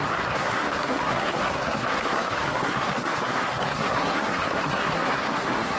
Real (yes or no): no